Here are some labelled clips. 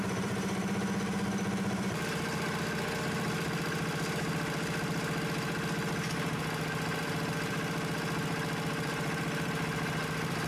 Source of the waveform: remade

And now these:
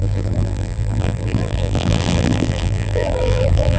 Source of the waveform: remade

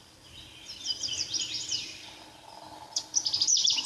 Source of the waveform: remade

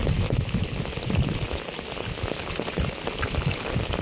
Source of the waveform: recorded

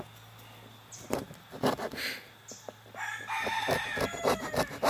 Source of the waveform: recorded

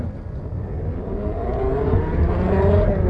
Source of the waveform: recorded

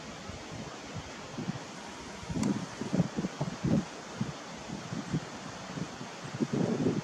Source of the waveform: recorded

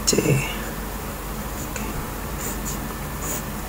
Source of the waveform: recorded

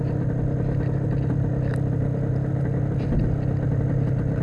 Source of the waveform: recorded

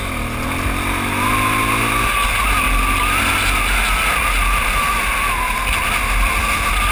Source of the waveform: recorded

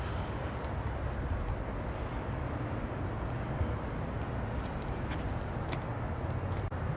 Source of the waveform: recorded